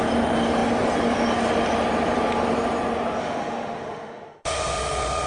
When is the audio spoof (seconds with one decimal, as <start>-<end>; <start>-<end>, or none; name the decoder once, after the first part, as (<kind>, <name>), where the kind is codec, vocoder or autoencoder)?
3.2-5.3 (autoencoder, DAC-VAE)